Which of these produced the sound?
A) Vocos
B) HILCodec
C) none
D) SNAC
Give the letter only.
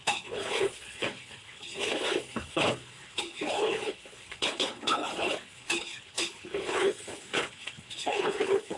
B